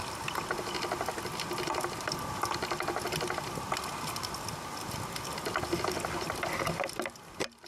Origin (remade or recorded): recorded